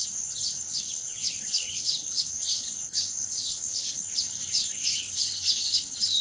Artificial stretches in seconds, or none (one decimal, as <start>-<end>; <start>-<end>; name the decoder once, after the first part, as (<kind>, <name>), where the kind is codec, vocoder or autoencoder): 0.0-6.2 (codec, HILCodec)